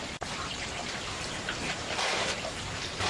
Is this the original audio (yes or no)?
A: no